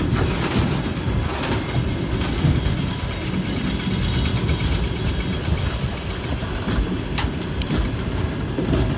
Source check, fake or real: real